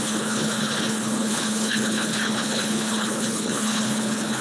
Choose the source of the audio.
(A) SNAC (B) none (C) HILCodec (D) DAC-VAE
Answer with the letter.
C